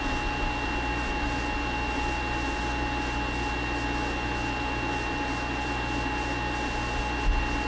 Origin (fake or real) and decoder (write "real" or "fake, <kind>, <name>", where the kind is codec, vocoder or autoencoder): real